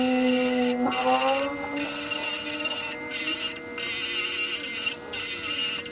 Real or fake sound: real